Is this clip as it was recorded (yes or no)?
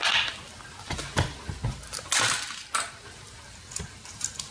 yes